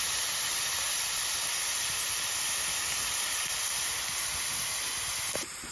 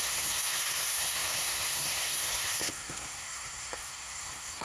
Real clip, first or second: first